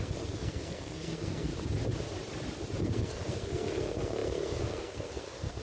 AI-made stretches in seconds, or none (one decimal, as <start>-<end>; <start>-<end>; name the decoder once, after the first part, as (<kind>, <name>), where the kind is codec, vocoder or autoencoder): 0.0-1.5 (codec, SNAC); 2.8-5.6